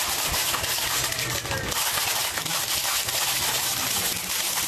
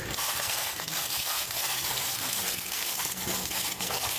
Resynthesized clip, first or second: second